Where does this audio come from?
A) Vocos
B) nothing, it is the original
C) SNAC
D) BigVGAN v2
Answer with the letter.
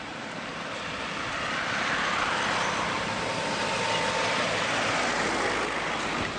B